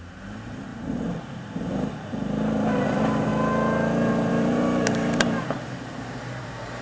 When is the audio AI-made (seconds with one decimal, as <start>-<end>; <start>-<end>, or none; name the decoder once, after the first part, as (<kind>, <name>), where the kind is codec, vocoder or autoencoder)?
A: 0.0-3.3 (vocoder, BigVGAN v2); 4.3-6.8